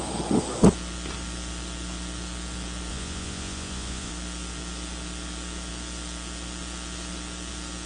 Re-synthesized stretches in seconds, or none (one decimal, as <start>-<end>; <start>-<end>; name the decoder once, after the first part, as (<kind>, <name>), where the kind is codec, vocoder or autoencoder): 2.9-4.1 (vocoder, Vocos)